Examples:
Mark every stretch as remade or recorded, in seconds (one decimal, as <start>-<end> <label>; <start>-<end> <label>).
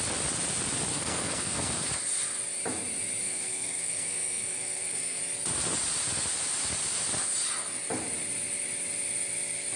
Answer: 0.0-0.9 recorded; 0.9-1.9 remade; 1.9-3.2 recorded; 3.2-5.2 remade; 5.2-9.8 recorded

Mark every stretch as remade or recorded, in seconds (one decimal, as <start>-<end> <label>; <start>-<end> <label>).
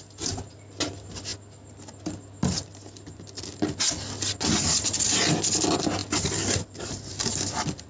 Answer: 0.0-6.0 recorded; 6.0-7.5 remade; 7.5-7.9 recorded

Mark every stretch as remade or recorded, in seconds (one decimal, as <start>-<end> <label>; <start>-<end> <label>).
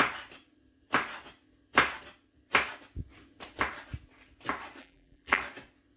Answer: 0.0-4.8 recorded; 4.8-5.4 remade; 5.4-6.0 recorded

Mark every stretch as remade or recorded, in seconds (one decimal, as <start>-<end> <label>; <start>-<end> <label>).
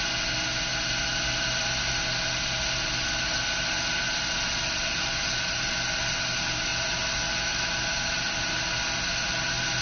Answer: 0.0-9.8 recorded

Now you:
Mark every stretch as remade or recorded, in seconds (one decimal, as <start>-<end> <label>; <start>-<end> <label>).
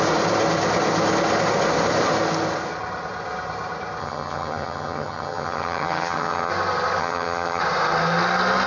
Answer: 0.0-4.0 recorded; 4.0-6.5 remade; 6.5-7.0 recorded; 7.0-7.6 remade; 7.6-8.7 recorded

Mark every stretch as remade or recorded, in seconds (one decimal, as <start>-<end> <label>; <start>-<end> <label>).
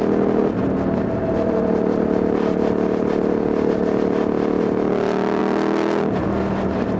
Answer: 0.0-7.0 recorded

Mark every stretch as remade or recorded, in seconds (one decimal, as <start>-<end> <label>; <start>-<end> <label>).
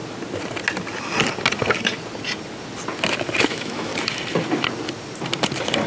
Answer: 0.0-3.5 recorded; 3.5-3.9 remade; 3.9-5.9 recorded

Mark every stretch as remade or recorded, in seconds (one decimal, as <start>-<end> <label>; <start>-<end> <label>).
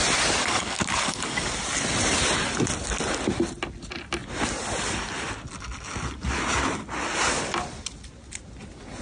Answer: 0.0-0.4 recorded; 0.4-1.5 remade; 1.5-9.0 recorded